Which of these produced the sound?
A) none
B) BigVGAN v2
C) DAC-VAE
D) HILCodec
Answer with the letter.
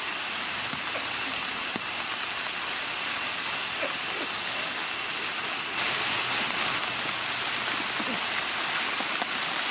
A